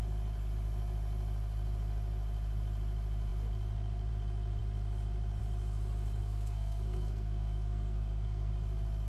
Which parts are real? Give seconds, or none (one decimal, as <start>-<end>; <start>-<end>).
0.0-6.2; 8.5-9.1